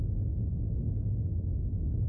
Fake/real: fake